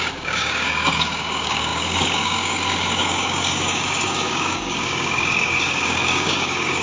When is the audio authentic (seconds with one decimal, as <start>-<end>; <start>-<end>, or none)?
none